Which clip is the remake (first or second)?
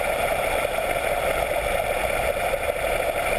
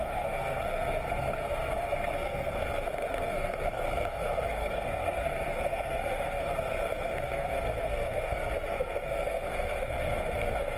second